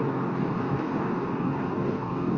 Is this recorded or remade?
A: remade